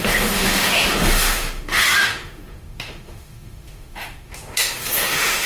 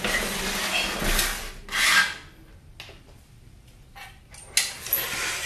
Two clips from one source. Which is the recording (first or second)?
second